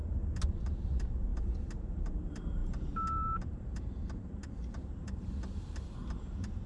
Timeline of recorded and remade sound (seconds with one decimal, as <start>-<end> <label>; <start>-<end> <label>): 0.0-0.6 recorded; 0.6-6.7 remade